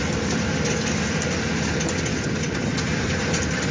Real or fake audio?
real